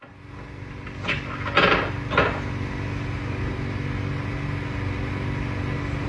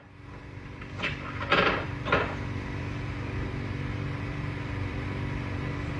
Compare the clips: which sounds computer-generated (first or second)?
second